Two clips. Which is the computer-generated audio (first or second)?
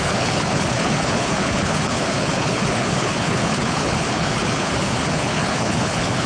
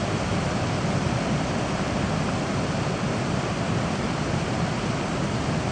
first